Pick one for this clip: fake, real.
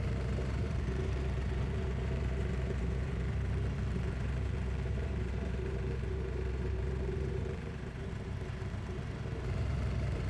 fake